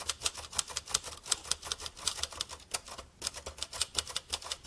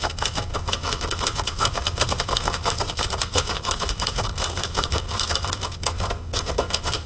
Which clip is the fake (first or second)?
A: second